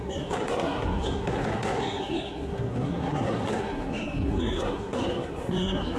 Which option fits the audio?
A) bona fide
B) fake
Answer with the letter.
B